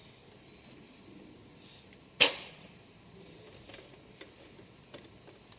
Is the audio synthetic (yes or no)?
no